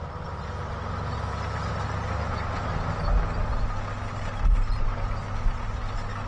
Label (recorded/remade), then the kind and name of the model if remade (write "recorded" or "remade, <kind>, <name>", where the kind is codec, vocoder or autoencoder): recorded